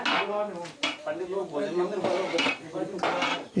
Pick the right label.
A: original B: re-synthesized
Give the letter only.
A